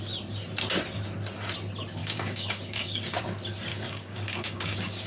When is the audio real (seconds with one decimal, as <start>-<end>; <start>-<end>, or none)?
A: 0.0-2.0; 3.2-3.7